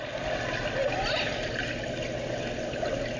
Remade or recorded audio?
recorded